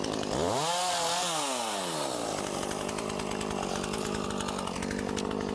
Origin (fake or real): real